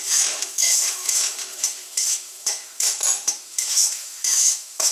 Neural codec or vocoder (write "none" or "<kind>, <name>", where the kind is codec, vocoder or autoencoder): autoencoder, DAC-VAE